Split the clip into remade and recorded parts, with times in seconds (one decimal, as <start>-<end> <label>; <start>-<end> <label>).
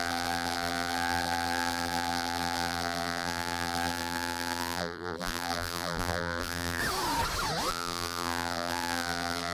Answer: 0.0-6.8 remade; 6.8-7.7 recorded; 7.7-9.5 remade